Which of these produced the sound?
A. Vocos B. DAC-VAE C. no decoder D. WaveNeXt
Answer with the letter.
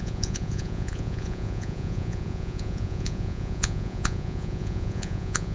A